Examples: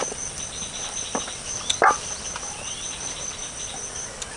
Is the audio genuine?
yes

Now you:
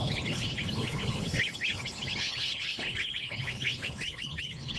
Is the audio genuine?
no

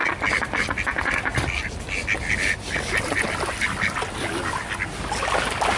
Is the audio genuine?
yes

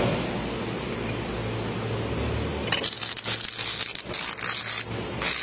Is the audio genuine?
yes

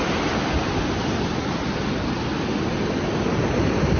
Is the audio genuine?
yes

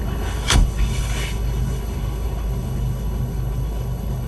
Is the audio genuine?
no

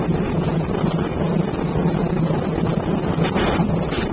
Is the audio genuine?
yes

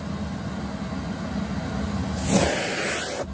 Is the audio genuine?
yes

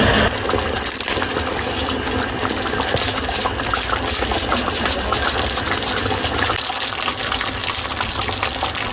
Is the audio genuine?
yes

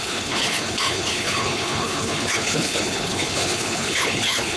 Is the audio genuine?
no